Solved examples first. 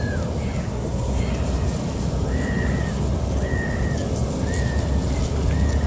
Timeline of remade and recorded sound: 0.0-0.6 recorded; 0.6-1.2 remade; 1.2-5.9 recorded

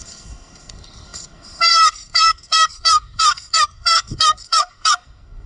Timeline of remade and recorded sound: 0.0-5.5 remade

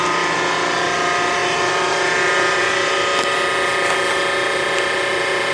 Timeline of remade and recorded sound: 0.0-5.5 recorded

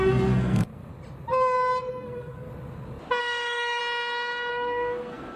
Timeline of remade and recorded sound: 0.0-0.9 remade; 0.9-1.9 recorded; 1.9-2.5 remade; 2.5-3.2 recorded; 3.2-3.8 remade; 3.8-4.5 recorded; 4.5-5.4 remade

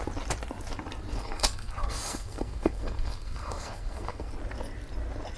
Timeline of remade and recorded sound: 0.0-1.1 recorded; 1.1-4.3 remade; 4.3-5.4 recorded